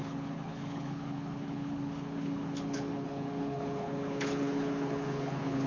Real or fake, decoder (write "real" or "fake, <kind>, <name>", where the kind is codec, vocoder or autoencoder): fake, codec, HILCodec